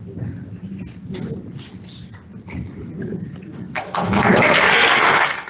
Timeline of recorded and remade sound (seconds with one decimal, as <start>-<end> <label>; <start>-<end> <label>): 0.0-3.4 recorded; 3.4-5.5 remade